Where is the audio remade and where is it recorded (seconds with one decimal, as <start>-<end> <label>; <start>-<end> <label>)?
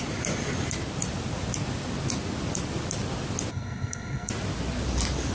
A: 0.0-3.5 recorded; 3.5-4.3 remade; 4.3-5.3 recorded